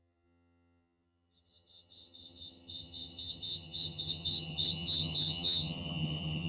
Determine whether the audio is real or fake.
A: fake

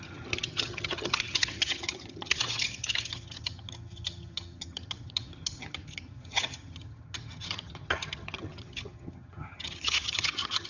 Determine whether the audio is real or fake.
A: fake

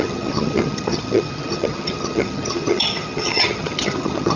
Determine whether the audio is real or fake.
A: fake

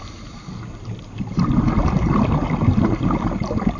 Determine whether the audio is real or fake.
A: real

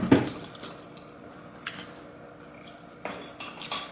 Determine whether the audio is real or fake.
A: real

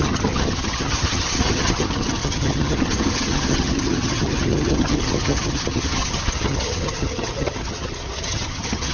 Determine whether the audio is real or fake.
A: fake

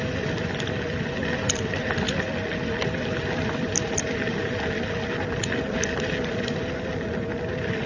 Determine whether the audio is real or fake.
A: real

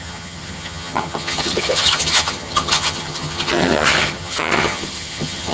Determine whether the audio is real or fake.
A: fake